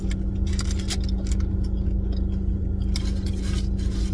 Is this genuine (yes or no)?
yes